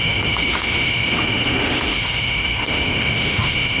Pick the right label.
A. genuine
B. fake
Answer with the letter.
B